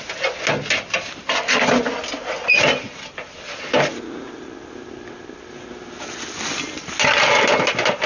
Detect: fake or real real